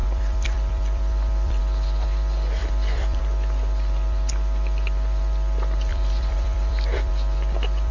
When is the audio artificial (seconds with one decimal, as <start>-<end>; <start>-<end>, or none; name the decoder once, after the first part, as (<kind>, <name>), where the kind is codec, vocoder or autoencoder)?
0.0-1.6 (vocoder, BigVGAN v2); 2.6-3.2; 5.9-7.1